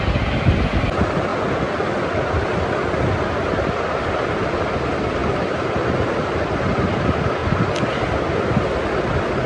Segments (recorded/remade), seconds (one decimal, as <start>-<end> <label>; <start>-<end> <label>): 0.0-5.2 recorded; 5.2-5.7 remade; 5.7-9.5 recorded